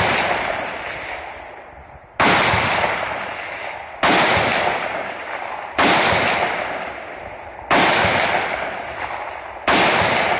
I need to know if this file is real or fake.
real